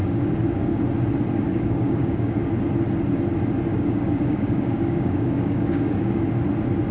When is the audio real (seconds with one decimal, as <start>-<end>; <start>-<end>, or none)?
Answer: 0.8-1.5; 2.5-3.7; 6.2-6.9